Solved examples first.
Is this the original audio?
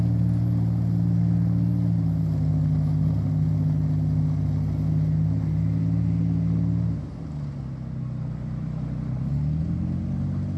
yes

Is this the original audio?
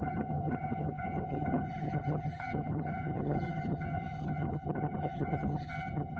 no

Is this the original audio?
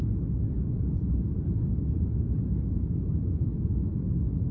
yes